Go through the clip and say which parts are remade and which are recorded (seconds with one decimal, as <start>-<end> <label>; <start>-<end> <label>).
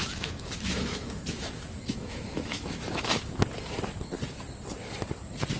0.0-3.4 remade; 3.4-5.6 recorded